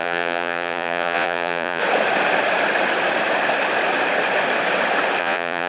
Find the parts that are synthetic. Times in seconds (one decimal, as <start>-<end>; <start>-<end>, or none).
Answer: 0.0-1.8; 5.2-5.7